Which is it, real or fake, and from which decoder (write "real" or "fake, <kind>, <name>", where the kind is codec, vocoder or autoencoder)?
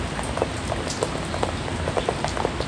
real